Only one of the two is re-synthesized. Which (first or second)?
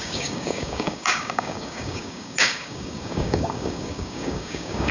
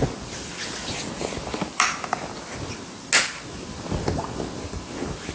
first